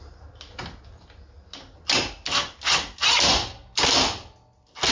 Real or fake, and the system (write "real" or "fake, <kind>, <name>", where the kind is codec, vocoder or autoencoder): real